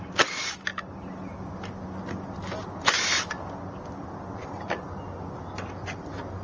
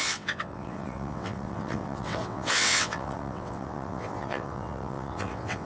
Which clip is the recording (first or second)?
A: first